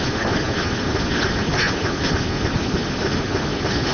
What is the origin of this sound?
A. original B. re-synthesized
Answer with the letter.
A